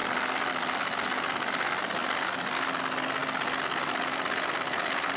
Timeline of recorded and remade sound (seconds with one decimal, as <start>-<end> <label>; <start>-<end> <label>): 0.0-5.2 recorded